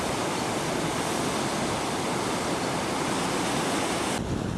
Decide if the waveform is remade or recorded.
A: recorded